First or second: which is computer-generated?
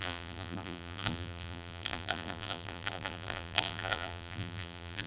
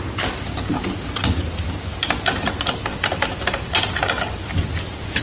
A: first